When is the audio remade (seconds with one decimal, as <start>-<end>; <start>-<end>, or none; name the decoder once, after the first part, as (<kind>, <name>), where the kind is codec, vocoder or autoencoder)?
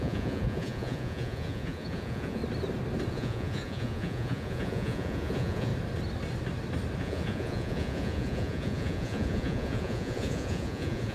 0.0-2.4 (vocoder, Vocos); 3.1-5.7; 7.0-11.1